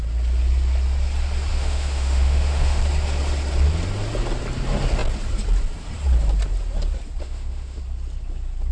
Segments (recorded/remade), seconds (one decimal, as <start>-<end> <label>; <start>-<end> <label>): 0.0-1.5 recorded; 1.5-2.8 remade; 2.8-7.2 recorded; 7.2-7.8 remade; 7.8-8.7 recorded